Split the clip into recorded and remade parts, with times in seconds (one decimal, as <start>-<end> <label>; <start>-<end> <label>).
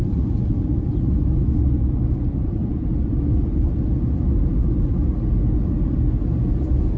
0.0-7.0 recorded